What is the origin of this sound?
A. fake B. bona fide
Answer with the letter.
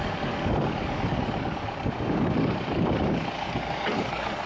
A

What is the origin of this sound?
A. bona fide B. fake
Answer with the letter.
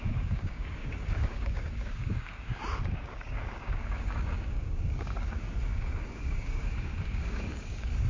B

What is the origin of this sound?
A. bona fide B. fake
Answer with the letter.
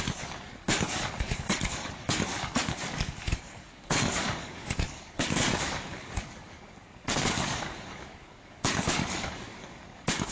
B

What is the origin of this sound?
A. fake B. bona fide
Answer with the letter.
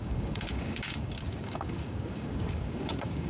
A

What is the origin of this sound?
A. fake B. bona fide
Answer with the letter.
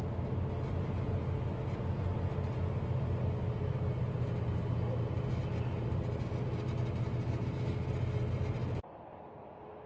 B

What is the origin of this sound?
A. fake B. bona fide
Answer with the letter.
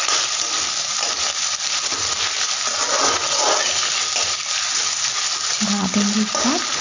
B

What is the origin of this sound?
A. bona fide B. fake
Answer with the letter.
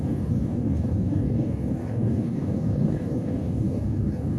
B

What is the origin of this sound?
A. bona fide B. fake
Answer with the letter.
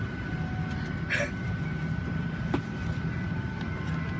A